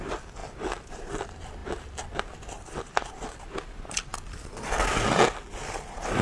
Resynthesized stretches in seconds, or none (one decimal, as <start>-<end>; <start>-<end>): 0.4-0.9